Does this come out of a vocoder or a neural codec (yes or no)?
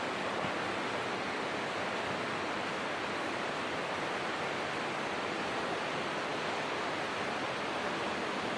no